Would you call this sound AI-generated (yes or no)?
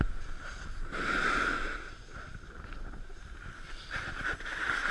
no